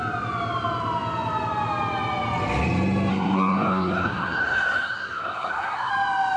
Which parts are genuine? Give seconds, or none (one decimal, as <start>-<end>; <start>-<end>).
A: 0.0-3.1; 5.9-6.4

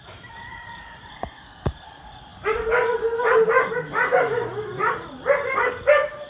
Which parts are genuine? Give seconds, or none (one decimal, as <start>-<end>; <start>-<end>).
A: 0.0-1.1; 1.7-6.3

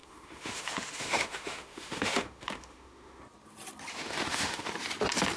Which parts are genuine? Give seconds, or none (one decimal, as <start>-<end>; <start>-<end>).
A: 3.2-3.9; 4.7-5.4